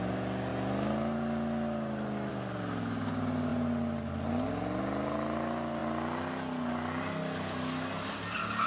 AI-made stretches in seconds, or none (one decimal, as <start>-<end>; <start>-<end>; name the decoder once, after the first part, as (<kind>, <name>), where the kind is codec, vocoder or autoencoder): none